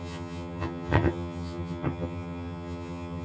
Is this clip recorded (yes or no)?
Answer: no